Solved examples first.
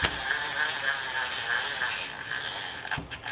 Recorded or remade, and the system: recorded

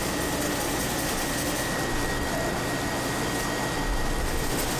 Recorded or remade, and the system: recorded